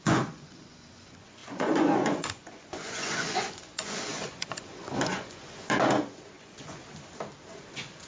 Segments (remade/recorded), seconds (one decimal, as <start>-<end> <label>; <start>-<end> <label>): 0.0-6.8 remade; 6.8-7.5 recorded; 7.5-8.1 remade